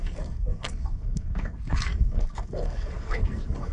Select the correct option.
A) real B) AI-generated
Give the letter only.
B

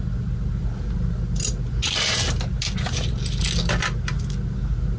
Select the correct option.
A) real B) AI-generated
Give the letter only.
A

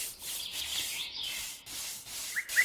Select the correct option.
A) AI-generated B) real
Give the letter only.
A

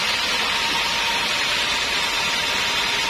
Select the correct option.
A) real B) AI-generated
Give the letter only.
A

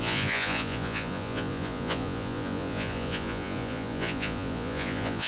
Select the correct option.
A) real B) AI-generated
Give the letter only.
B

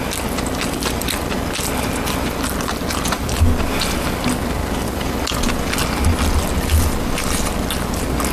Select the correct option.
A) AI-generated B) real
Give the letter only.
B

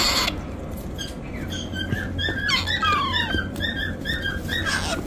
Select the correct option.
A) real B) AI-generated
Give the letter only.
A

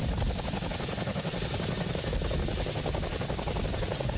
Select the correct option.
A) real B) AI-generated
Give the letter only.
A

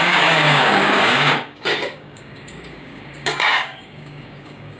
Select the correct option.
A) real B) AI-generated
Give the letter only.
B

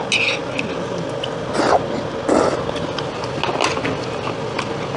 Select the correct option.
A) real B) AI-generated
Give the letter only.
A